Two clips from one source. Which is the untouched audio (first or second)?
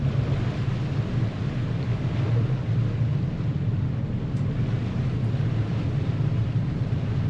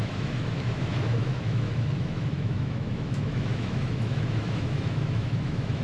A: first